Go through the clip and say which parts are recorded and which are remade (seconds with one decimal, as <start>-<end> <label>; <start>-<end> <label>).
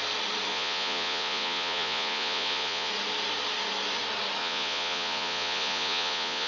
0.0-0.5 recorded; 0.5-2.9 remade; 2.9-4.4 recorded; 4.4-6.5 remade